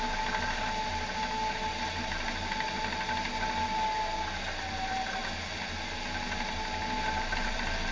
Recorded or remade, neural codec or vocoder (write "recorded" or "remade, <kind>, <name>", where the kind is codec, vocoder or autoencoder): recorded